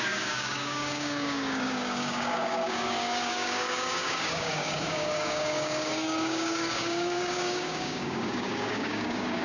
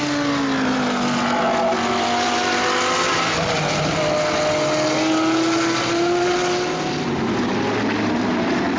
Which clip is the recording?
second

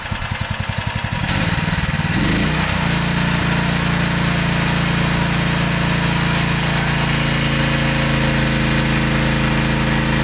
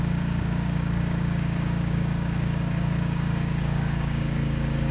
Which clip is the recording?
first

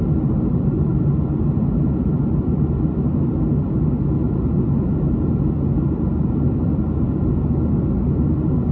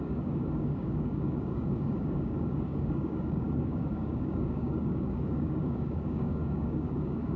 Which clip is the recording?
first